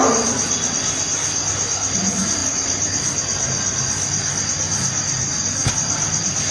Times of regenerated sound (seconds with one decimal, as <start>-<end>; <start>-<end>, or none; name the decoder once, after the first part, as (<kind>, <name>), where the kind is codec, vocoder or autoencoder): none